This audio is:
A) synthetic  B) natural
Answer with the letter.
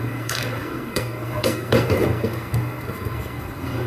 A